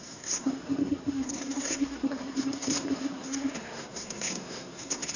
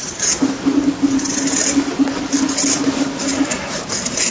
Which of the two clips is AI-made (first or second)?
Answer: first